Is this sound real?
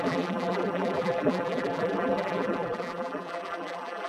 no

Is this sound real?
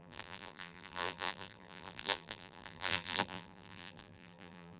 no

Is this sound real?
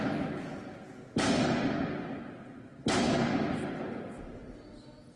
yes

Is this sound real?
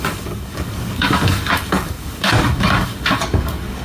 no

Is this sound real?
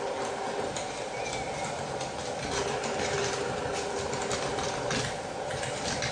yes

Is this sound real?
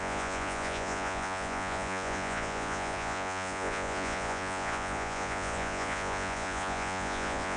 no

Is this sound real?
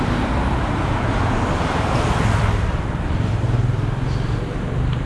yes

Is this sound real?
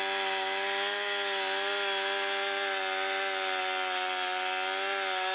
yes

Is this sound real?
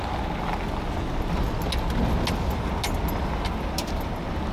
yes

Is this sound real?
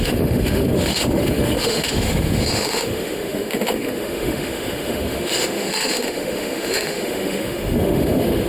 no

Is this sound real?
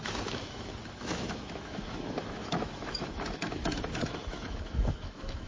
no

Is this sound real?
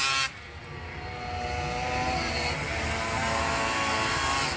yes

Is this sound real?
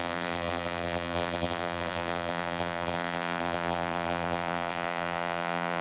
no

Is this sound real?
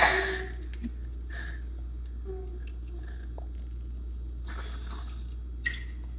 yes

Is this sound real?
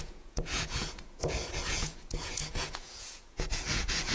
no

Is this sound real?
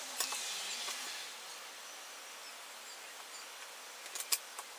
yes